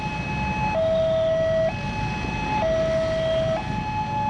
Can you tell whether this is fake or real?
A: real